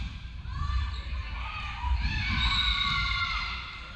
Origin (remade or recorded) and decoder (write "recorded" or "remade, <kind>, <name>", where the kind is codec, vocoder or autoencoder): remade, vocoder, BigVGAN v2